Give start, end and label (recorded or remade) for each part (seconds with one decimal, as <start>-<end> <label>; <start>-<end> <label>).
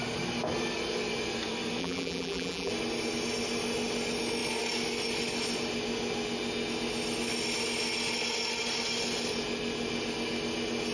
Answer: 0.0-1.8 recorded; 1.8-2.7 remade; 2.7-10.9 recorded